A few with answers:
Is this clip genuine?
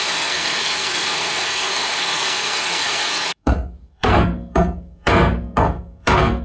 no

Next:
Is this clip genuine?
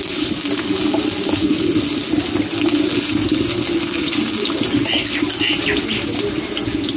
yes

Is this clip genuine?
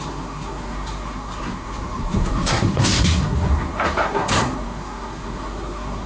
no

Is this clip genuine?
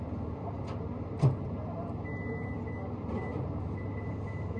yes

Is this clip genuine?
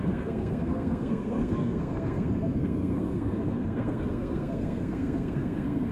no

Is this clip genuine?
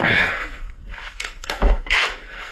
no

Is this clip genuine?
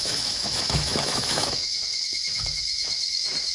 no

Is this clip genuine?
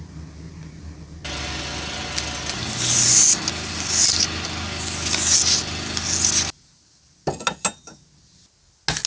yes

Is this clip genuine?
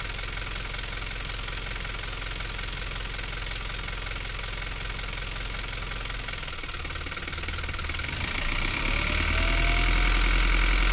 yes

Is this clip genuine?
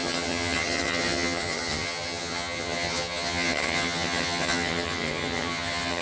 no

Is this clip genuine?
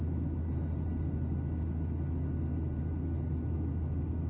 yes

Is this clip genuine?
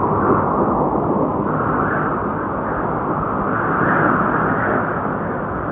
yes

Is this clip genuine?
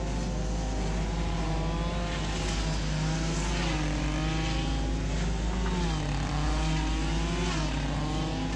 yes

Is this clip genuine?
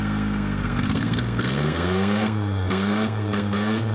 no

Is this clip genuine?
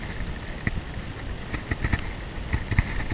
yes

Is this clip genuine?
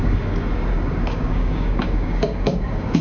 no